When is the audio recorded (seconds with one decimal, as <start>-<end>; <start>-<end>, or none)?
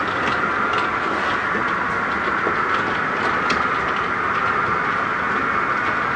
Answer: 0.0-6.2